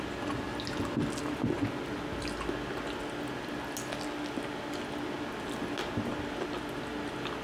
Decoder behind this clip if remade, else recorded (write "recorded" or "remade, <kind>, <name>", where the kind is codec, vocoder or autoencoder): recorded